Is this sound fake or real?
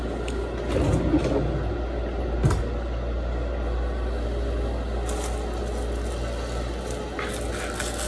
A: real